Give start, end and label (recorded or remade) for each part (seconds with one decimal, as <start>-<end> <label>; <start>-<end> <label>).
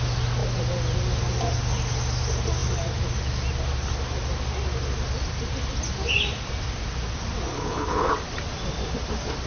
0.0-7.5 recorded; 7.5-8.1 remade; 8.1-9.5 recorded